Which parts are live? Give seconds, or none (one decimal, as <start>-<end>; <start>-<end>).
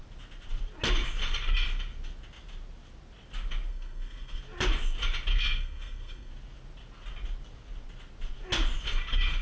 0.0-3.7; 4.4-5.3; 6.3-9.4